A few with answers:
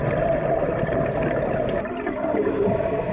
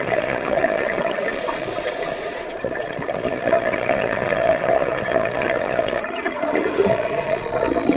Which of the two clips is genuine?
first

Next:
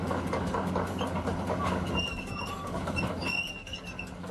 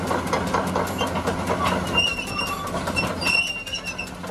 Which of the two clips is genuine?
second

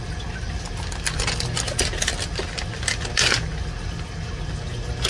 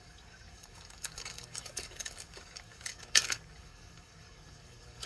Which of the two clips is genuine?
first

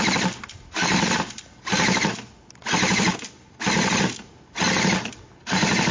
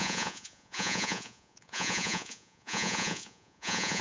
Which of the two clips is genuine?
first